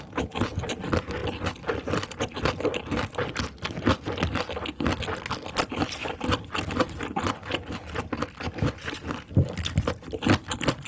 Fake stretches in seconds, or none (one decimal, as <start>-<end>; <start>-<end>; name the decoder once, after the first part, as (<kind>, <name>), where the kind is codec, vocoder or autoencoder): none